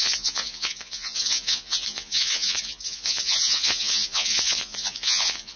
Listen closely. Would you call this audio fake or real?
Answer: fake